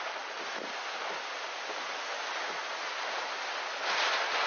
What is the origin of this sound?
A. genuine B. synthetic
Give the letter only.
A